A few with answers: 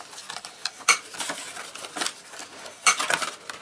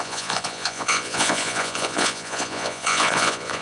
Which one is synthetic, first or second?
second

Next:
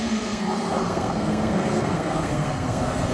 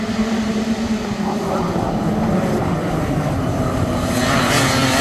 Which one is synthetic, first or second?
first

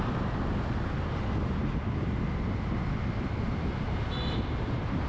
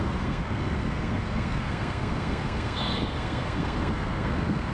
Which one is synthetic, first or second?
second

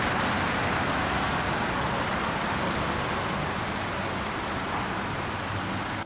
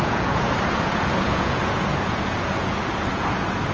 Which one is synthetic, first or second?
second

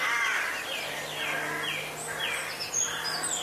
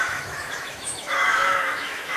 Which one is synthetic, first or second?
second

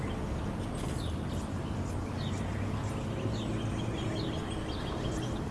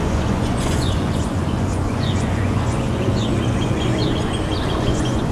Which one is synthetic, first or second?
second